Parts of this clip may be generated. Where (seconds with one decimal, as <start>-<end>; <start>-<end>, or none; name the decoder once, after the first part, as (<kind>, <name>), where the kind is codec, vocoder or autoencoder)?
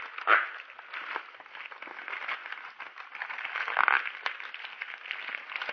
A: none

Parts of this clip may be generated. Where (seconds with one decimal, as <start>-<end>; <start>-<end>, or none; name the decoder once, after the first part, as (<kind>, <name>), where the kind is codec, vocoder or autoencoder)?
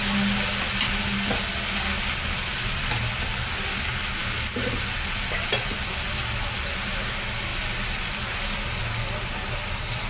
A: none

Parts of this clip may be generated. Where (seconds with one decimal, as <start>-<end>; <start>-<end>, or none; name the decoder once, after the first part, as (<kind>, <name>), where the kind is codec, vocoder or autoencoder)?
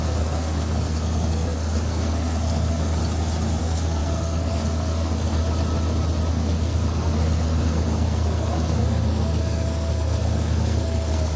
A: 0.0-3.0 (codec, SNAC); 3.6-5.4; 6.3-11.4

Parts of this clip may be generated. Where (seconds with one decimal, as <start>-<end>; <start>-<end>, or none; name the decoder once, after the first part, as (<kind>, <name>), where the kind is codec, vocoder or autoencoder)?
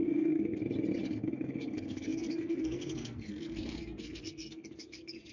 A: 0.0-0.6 (codec, SNAC); 1.1-5.3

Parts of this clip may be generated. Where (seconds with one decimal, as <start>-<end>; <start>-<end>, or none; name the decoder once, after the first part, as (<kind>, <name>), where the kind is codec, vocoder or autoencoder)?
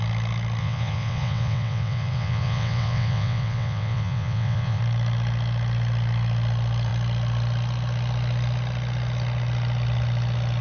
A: 0.6-4.8 (vocoder, WaveNeXt)